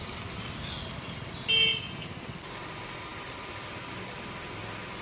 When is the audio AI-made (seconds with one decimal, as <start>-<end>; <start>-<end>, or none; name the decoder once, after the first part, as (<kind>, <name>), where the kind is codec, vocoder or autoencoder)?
none

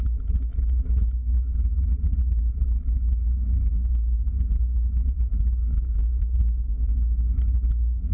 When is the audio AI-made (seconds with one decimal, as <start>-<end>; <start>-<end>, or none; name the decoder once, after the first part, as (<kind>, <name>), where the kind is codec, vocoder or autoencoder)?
3.7-4.3 (codec, SNAC); 5.6-7.4